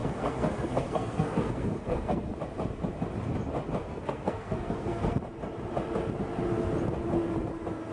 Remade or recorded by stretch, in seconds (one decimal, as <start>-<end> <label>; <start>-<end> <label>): 0.0-2.4 remade; 2.4-3.8 recorded; 3.8-5.2 remade; 5.2-7.9 recorded